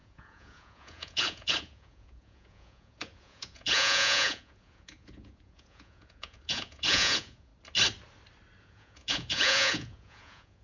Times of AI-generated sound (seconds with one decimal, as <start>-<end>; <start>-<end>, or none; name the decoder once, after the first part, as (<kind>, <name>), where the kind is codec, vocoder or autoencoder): 0.0-7.5 (vocoder, Vocos); 8.6-10.6